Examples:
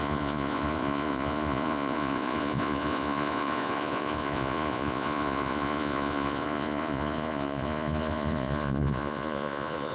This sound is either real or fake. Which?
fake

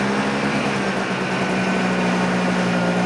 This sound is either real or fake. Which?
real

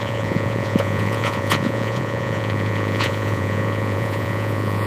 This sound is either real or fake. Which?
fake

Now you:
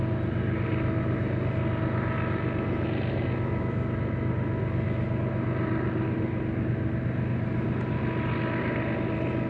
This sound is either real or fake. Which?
real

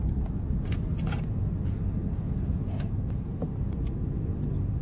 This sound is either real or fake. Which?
real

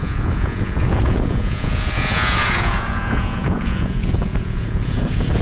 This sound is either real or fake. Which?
fake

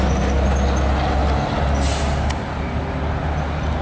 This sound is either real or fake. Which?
real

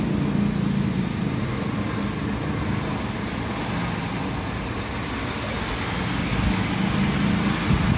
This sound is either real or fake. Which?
real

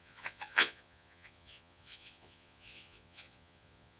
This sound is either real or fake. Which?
fake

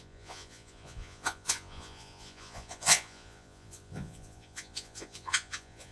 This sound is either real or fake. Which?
fake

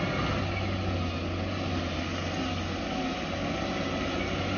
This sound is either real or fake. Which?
real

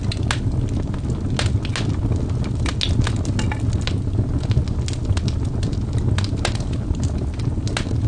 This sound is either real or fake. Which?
real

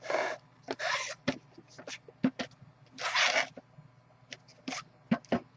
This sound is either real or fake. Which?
real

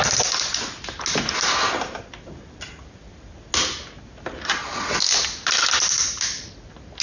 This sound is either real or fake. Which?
real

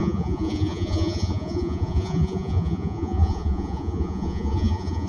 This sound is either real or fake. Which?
fake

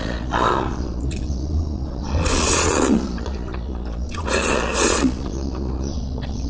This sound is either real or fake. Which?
fake